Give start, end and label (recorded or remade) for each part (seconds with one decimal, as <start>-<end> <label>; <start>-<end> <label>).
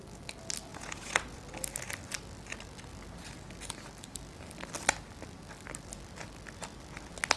0.0-0.7 recorded; 0.7-1.4 remade; 1.4-7.4 recorded